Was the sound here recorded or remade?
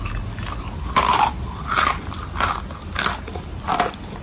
recorded